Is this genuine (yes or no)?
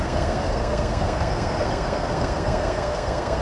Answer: no